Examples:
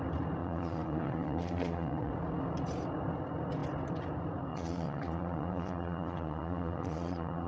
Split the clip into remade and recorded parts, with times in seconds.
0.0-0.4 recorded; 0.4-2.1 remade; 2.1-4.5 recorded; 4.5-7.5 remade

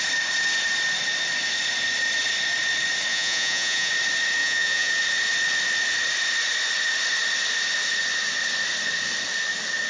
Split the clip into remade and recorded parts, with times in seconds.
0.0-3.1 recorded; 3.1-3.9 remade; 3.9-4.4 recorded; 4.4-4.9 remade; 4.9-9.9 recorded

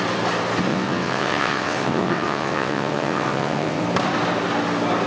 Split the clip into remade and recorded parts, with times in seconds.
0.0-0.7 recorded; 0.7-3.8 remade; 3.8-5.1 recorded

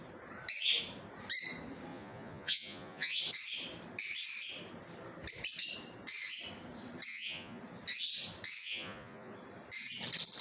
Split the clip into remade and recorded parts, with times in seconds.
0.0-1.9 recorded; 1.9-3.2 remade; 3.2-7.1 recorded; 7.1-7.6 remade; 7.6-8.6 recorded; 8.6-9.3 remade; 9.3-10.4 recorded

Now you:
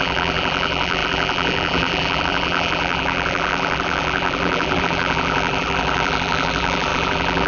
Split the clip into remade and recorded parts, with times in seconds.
0.0-7.5 remade

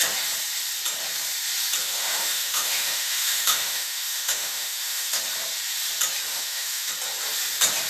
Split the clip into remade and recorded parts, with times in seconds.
0.0-1.8 recorded; 1.8-5.2 remade; 5.2-6.3 recorded; 6.3-6.9 remade; 6.9-7.9 recorded